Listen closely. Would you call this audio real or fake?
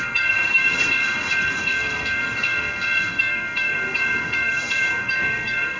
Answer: fake